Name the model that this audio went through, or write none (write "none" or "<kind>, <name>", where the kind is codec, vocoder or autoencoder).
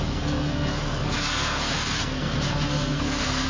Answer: codec, SNAC